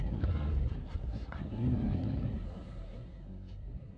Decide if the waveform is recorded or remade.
remade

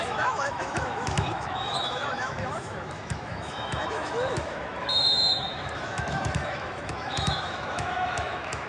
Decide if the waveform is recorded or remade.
remade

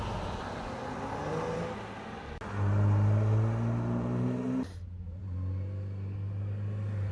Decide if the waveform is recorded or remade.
recorded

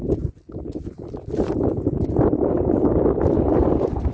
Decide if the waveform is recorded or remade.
recorded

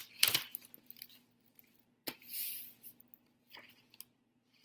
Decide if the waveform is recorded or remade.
recorded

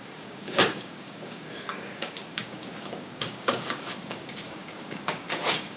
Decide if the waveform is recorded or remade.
remade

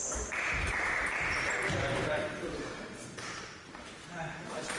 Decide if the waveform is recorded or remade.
remade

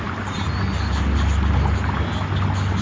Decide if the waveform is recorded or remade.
recorded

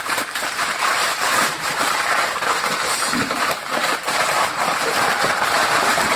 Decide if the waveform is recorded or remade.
remade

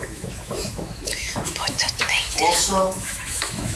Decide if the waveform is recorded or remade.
remade